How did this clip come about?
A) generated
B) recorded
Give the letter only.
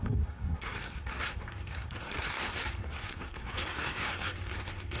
A